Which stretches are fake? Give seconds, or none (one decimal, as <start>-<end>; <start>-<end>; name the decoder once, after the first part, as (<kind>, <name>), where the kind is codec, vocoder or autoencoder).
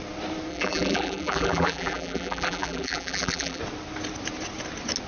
0.5-3.6 (vocoder, BigVGAN v2)